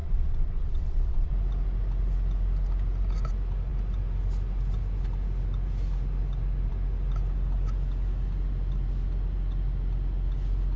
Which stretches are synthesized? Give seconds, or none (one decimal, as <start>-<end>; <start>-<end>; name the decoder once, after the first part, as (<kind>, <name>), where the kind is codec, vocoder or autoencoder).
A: 0.0-1.3 (vocoder, WaveNeXt)